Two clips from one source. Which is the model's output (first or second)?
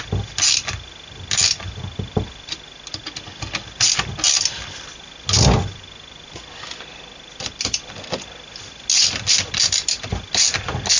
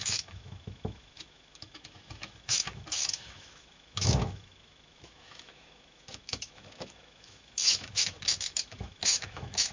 second